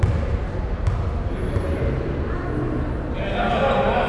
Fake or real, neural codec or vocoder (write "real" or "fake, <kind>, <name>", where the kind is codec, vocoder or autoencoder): real